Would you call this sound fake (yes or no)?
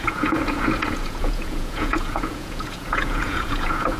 yes